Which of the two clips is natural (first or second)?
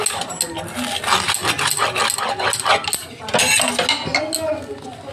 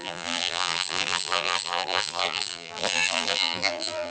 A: first